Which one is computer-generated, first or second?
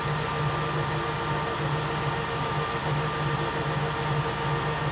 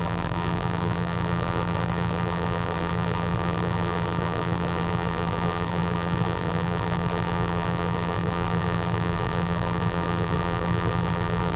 second